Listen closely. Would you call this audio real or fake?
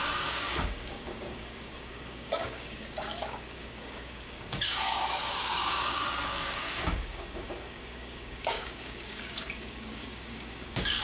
fake